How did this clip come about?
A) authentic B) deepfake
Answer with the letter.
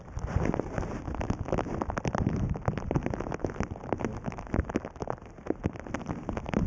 A